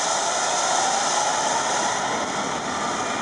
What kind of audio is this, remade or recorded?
recorded